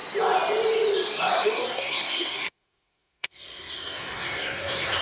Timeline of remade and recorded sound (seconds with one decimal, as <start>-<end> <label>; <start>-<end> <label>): 0.0-1.3 recorded; 1.3-5.0 remade